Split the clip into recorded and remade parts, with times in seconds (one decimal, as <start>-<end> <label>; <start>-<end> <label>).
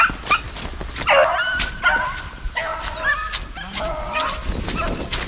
0.0-5.3 recorded